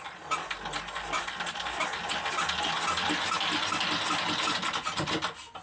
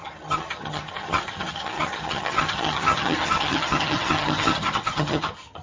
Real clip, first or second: first